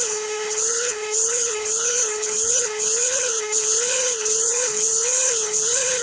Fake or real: fake